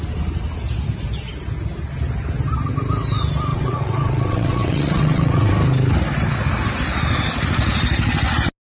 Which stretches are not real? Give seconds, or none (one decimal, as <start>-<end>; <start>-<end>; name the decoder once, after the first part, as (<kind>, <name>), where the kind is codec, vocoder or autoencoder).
3.5-5.5 (vocoder, WaveNeXt)